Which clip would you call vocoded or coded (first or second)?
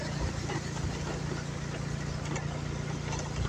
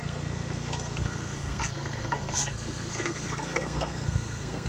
second